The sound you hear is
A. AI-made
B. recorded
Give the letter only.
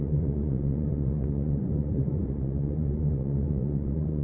A